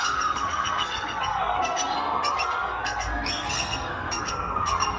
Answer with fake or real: fake